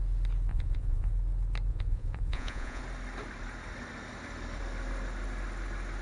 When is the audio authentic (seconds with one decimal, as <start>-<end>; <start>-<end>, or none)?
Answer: 0.0-0.5; 1.1-1.7; 2.8-6.0